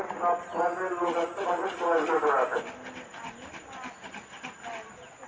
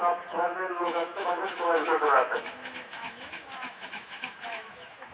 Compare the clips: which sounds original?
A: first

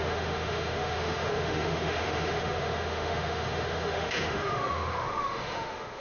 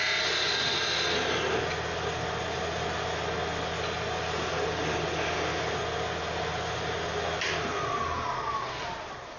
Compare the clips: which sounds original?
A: second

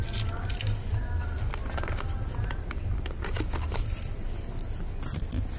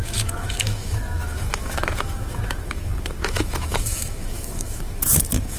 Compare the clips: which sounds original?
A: first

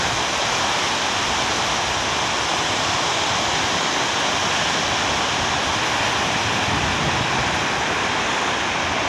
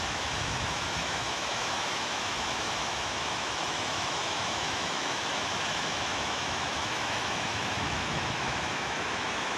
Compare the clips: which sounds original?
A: first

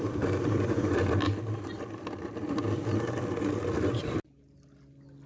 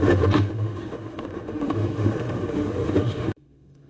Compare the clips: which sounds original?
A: first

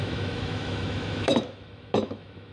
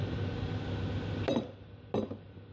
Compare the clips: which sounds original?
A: second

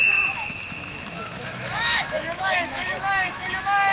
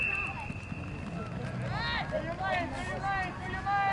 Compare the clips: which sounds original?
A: second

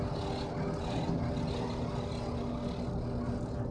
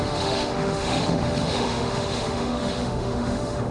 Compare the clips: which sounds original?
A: first